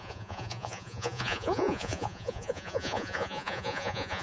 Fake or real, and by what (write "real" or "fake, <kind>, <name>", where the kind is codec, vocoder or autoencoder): fake, vocoder, Vocos